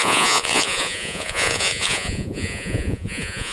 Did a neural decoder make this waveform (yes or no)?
yes